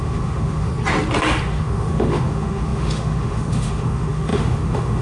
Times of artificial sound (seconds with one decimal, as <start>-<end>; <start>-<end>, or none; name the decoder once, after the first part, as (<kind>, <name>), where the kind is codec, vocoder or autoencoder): 0.0-0.7 (autoencoder, DAC-VAE); 1.4-5.0